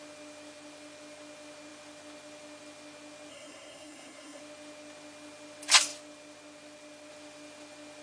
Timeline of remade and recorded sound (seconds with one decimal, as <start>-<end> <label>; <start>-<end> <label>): 0.0-3.3 recorded; 3.3-4.4 remade; 4.4-8.0 recorded